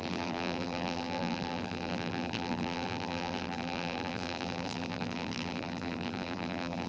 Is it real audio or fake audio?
fake